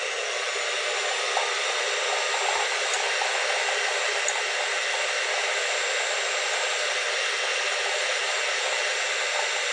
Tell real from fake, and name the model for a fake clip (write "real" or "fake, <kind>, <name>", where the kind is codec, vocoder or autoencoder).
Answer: real